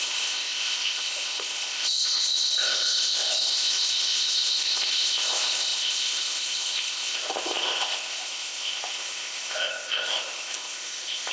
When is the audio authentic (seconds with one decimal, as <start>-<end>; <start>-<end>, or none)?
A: none